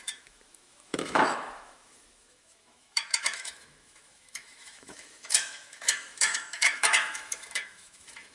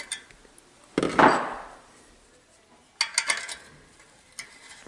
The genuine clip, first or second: second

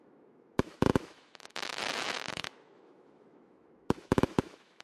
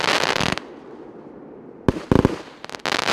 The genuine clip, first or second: second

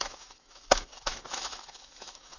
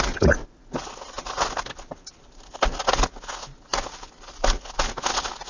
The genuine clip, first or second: second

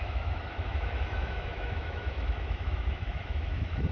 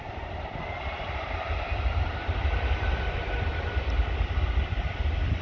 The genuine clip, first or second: second